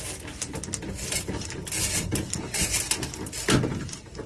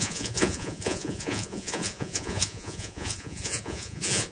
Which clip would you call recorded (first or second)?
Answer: first